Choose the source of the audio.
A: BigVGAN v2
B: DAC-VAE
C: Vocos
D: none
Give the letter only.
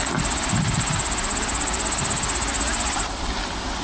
D